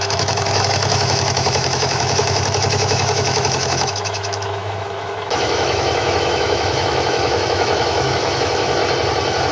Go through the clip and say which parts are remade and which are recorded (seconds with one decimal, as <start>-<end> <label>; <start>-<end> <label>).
0.0-8.8 remade; 8.8-9.5 recorded